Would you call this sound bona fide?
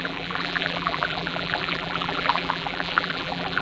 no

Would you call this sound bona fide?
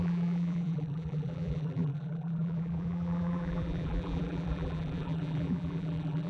no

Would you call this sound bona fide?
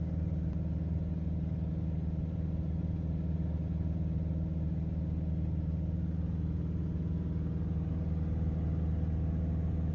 yes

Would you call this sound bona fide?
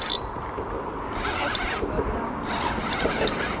no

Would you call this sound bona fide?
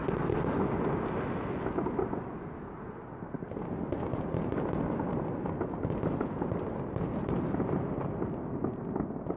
yes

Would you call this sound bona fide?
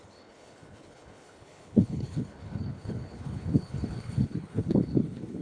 no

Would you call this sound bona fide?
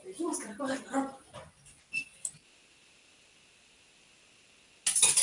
yes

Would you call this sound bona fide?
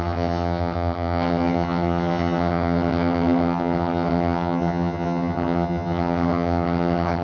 no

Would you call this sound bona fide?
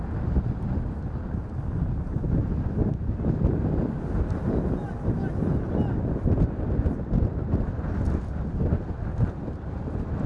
yes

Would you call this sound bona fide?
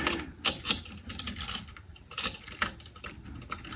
no